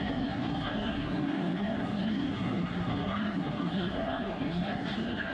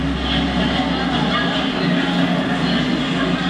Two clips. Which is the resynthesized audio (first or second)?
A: first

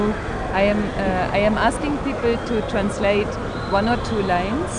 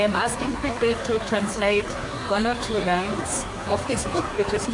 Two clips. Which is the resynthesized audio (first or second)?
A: second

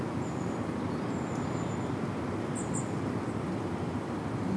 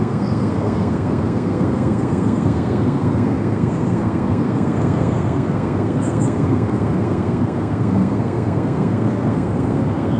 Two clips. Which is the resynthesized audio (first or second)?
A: second